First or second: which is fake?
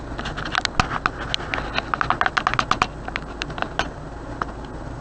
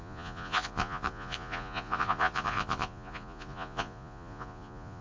second